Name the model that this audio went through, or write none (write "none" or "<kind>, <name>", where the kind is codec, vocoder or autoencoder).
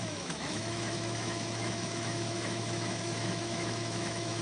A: autoencoder, DAC-VAE